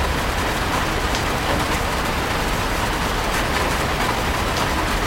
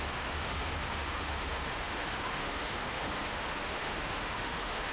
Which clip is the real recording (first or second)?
first